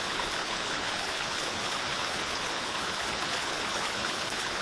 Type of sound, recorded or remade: remade